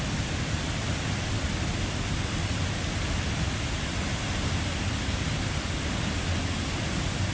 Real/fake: real